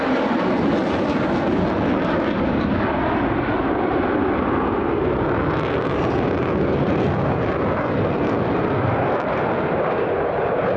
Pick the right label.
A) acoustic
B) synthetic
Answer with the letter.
A